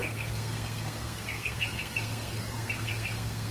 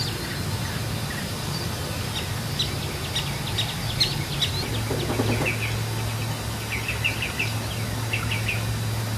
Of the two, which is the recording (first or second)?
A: second